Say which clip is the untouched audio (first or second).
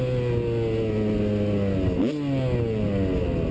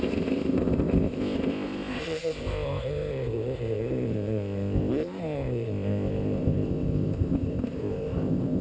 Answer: first